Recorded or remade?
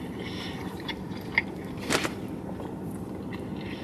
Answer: remade